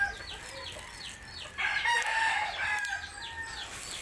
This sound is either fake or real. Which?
real